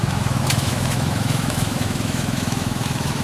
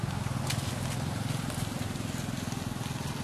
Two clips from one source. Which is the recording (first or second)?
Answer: second